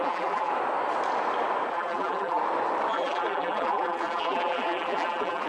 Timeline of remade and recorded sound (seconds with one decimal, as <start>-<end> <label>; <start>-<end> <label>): 0.0-0.5 remade; 0.5-1.7 recorded; 1.7-2.4 remade; 2.4-2.9 recorded; 2.9-5.5 remade

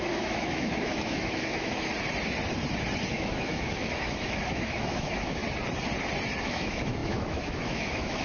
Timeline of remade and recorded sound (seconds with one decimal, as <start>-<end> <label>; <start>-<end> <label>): 0.0-1.9 remade; 1.9-3.1 recorded; 3.1-5.4 remade; 5.4-6.4 recorded; 6.4-8.2 remade

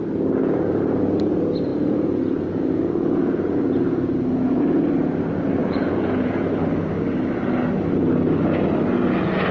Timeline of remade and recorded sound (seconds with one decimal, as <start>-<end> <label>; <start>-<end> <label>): 0.0-0.4 recorded; 0.4-1.0 remade; 1.0-1.7 recorded; 1.7-4.6 remade; 4.6-5.6 recorded; 5.6-6.3 remade; 6.3-9.5 recorded

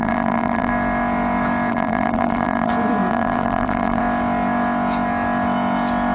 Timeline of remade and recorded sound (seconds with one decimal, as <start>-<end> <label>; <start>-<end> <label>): 0.0-0.7 remade; 0.7-1.7 recorded; 1.7-2.7 remade; 2.7-3.1 recorded; 3.1-4.0 remade; 4.0-6.1 recorded

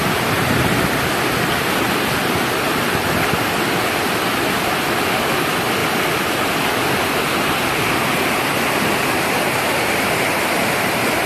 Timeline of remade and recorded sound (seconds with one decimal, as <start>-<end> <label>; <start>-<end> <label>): 0.0-0.8 remade; 0.8-11.3 recorded

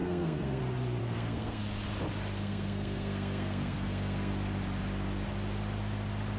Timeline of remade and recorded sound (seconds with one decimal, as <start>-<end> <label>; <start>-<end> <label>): 0.0-0.6 remade; 0.6-1.0 recorded; 1.0-1.6 remade; 1.6-2.4 recorded; 2.4-4.3 remade; 4.3-6.4 recorded